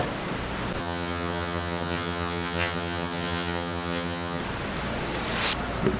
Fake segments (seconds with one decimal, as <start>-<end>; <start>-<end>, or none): 0.8-4.4

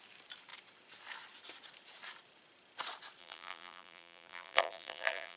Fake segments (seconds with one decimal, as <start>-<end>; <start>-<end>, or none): 3.2-5.4

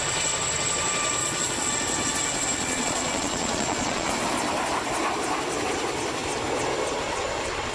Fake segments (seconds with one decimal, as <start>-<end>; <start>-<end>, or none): 1.2-1.7; 2.6-4.1